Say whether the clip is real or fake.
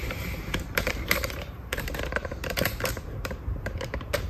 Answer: fake